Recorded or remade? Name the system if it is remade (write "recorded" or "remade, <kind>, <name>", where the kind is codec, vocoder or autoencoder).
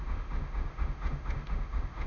remade, autoencoder, DAC-VAE